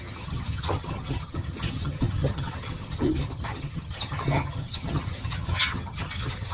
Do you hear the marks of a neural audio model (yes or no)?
yes